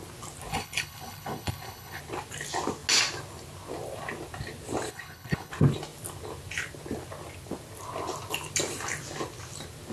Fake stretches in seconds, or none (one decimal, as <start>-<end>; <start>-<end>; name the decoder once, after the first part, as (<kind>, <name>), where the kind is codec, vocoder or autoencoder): 0.5-2.0 (codec, HILCodec); 4.9-5.5